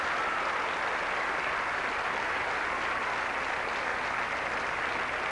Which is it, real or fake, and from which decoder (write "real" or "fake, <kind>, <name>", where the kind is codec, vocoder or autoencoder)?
real